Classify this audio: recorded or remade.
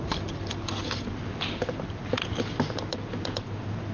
recorded